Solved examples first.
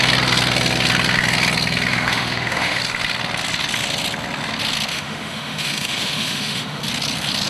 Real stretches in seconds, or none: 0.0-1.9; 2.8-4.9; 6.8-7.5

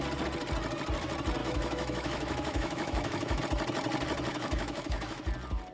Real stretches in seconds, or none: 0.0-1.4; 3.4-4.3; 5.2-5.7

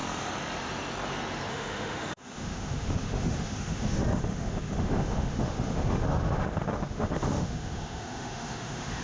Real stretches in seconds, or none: 0.0-1.5

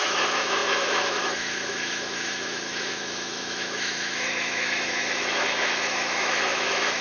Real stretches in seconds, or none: none